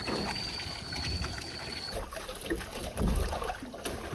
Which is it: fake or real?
real